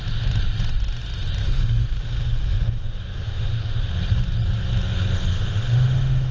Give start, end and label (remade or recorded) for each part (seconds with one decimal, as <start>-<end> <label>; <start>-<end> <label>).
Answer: 0.0-1.4 recorded; 1.4-3.9 remade; 3.9-5.3 recorded; 5.3-6.3 remade